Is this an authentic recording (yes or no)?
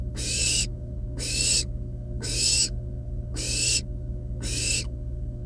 no